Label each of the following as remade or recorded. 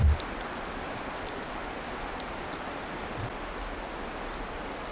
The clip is recorded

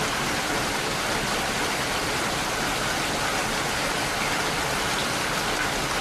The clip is recorded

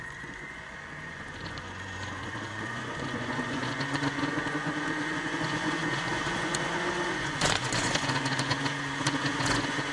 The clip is remade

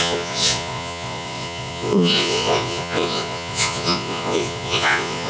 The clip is remade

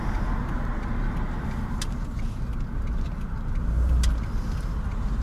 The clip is recorded